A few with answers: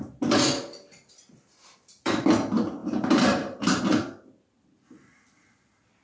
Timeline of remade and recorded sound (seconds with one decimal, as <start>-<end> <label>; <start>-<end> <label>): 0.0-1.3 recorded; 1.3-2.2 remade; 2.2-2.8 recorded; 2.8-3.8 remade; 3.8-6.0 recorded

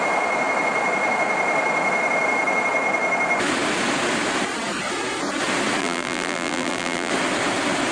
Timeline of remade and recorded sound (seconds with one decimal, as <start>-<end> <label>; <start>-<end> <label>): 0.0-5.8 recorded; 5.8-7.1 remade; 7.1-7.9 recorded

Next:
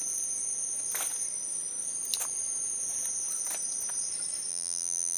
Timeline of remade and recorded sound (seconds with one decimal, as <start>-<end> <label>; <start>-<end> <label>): 0.0-4.5 recorded; 4.5-5.2 remade